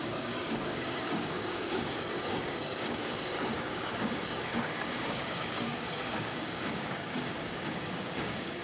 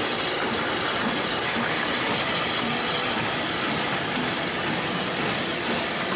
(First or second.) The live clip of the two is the second